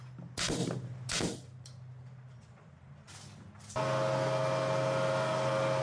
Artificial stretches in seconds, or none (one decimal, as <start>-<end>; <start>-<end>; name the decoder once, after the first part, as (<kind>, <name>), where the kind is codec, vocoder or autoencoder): none